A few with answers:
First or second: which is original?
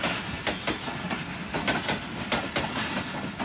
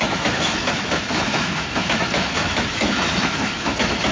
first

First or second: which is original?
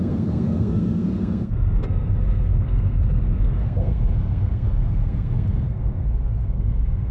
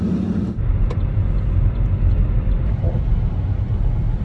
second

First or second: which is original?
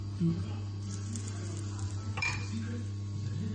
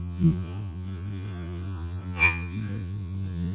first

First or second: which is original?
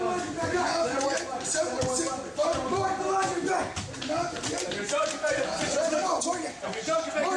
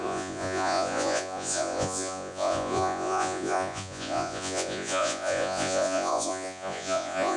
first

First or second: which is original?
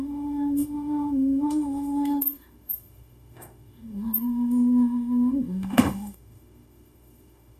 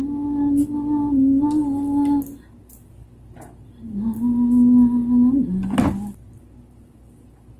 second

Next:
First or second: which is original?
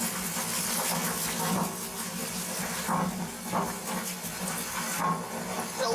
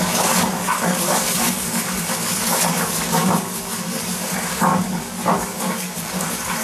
first